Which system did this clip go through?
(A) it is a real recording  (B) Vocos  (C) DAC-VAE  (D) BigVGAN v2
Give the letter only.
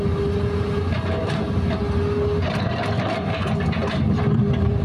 A